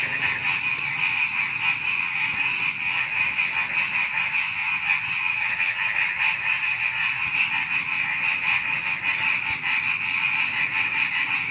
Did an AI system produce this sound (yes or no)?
no